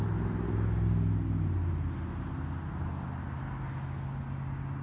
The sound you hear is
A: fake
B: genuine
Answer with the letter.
B